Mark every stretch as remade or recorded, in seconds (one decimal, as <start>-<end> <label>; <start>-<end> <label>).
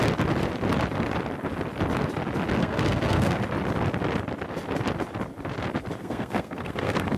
0.0-2.6 recorded; 2.6-3.4 remade; 3.4-6.0 recorded; 6.0-7.2 remade